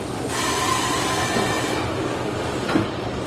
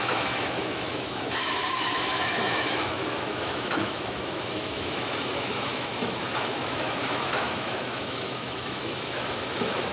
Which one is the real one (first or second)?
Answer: first